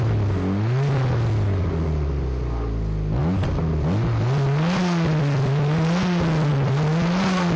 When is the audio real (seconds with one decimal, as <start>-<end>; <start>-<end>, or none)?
0.0-7.6